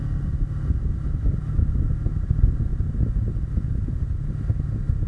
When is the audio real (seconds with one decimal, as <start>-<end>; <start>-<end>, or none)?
0.0-5.1